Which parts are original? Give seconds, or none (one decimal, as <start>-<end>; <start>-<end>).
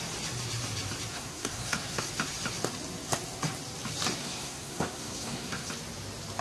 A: 0.0-1.1; 2.0-4.2; 5.7-6.4